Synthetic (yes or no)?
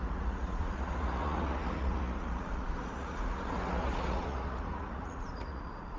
yes